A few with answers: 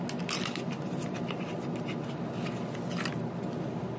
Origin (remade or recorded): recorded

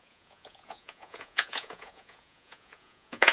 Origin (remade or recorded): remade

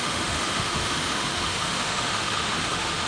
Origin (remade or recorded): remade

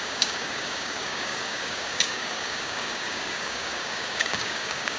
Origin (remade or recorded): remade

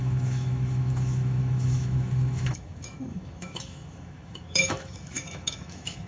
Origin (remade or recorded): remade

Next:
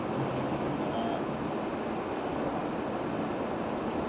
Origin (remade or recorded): recorded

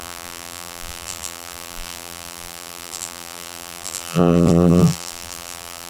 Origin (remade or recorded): remade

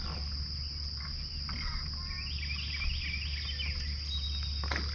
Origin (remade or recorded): recorded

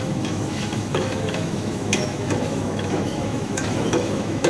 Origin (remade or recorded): remade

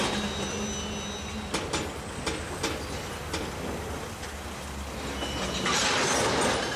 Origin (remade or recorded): recorded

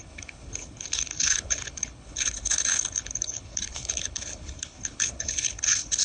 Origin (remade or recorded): remade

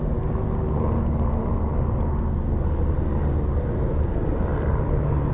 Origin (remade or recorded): recorded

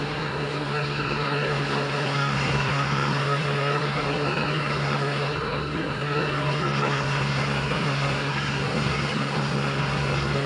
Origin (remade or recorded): remade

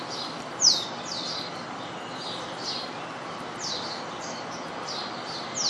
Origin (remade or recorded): recorded